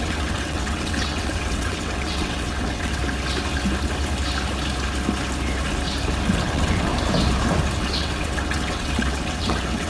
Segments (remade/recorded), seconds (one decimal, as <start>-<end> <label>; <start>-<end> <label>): 0.0-3.0 remade; 3.0-6.3 recorded; 6.3-6.9 remade; 6.9-7.8 recorded; 7.8-9.9 remade